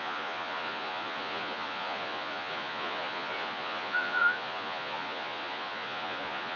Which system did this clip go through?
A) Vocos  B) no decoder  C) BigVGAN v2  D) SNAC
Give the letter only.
A